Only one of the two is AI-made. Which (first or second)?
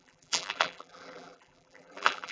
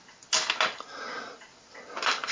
first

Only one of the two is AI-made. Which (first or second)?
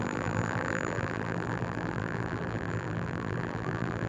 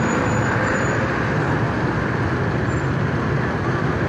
first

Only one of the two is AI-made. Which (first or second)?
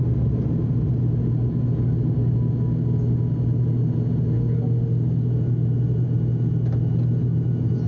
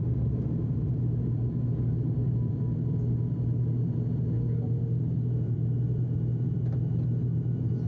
second